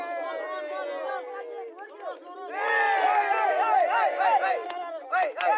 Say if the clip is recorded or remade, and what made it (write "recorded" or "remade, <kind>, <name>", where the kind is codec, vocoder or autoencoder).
recorded